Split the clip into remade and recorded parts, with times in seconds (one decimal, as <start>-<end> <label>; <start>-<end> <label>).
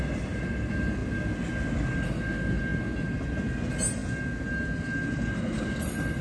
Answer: 0.0-6.2 recorded